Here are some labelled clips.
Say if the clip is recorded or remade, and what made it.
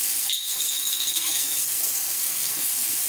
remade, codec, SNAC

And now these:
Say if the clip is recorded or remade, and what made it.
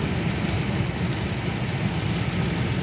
recorded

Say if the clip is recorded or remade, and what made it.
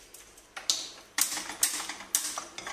recorded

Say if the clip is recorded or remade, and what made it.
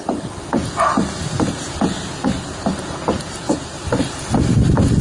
recorded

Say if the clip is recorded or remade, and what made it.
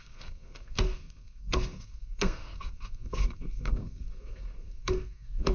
remade, codec, SNAC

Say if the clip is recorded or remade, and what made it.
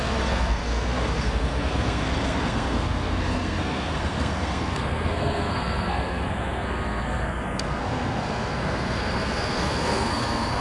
remade, codec, SNAC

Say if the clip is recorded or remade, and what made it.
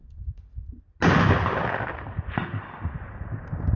recorded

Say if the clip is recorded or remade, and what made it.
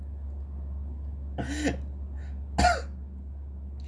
recorded